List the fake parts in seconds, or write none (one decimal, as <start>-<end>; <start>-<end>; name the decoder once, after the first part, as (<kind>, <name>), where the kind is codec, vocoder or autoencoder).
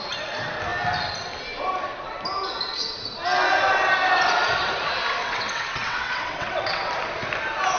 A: 5.2-6.9 (vocoder, WaveNeXt)